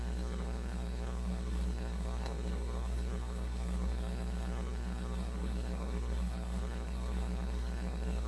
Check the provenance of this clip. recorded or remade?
remade